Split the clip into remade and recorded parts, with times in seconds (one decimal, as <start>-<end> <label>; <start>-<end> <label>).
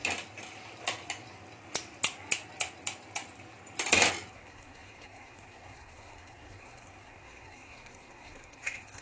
0.0-4.3 recorded; 4.3-9.0 remade